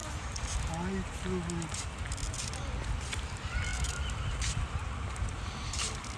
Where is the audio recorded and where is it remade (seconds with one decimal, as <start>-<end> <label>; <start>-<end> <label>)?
0.0-6.2 recorded

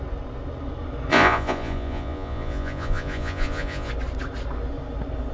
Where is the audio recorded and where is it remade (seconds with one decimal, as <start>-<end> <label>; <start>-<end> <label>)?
0.0-1.1 recorded; 1.1-3.9 remade; 3.9-5.3 recorded

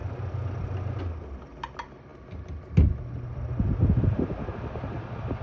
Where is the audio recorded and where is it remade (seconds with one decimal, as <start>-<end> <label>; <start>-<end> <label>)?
0.0-5.4 recorded

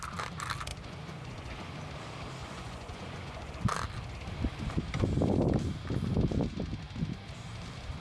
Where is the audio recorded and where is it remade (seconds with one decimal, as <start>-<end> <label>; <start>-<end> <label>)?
0.0-0.7 recorded; 0.7-1.5 remade; 1.5-2.4 recorded; 2.4-3.5 remade; 3.5-8.0 recorded

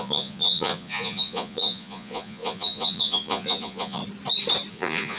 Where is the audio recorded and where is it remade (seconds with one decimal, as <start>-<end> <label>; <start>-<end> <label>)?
0.0-4.0 remade; 4.0-4.7 recorded; 4.7-5.2 remade

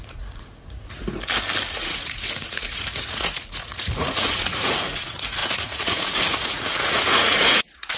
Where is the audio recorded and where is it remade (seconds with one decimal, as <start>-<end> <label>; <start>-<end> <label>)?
0.0-1.0 remade; 1.0-1.7 recorded; 1.7-8.0 remade

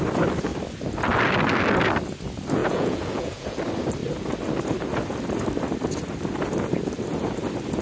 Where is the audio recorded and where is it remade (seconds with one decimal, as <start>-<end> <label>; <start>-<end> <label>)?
0.0-2.6 recorded; 2.6-3.6 remade; 3.6-7.8 recorded